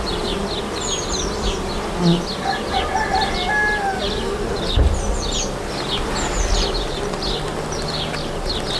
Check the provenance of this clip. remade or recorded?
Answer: recorded